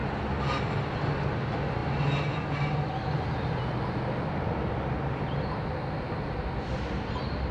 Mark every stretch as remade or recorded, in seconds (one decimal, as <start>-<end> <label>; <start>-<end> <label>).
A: 0.0-7.5 recorded